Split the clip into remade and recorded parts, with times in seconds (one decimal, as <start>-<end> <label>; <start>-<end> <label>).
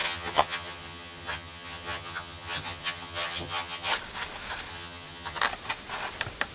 0.0-3.9 remade; 3.9-4.7 recorded; 4.7-5.4 remade; 5.4-6.5 recorded